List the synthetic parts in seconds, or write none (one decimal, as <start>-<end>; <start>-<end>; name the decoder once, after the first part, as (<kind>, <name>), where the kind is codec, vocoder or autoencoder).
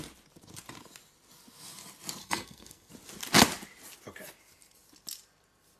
2.2-2.9 (codec, SNAC)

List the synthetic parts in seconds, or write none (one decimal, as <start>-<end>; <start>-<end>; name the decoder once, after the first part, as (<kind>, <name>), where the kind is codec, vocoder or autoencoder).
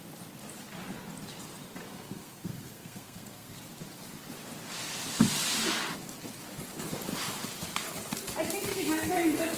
1.9-3.6 (codec, SNAC); 8.7-9.6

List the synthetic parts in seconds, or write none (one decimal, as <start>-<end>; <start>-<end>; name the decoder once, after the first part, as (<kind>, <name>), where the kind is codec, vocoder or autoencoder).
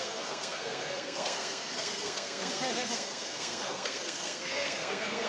0.0-5.3 (codec, SNAC)